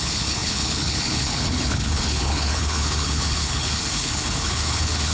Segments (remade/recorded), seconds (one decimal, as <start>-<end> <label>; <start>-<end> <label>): 0.0-5.1 remade